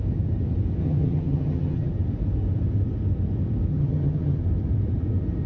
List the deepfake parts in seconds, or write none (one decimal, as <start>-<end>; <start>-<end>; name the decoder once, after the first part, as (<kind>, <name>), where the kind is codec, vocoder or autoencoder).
0.8-1.9 (vocoder, HiFi-GAN); 3.7-4.4